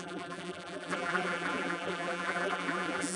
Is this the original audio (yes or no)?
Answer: no